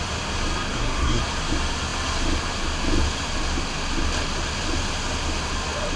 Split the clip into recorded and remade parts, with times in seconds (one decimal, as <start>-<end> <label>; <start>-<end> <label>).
0.0-0.7 recorded; 0.7-1.2 remade; 1.2-6.0 recorded